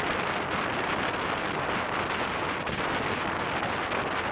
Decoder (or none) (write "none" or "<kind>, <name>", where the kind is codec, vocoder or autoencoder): none